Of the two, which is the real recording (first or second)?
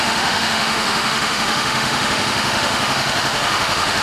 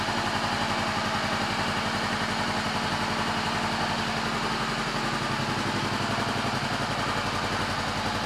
second